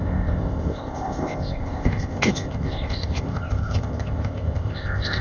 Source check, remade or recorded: remade